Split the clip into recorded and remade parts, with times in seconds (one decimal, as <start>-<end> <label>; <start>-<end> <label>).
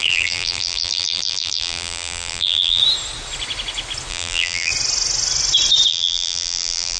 0.0-2.8 remade; 2.8-4.1 recorded; 4.1-4.7 remade; 4.7-5.9 recorded; 5.9-7.0 remade